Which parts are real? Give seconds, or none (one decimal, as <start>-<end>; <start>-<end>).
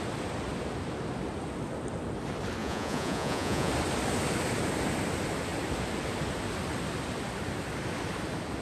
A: 0.0-2.6; 3.7-8.6